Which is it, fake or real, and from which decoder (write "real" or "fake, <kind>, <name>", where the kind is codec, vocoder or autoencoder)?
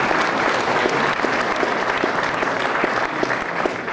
real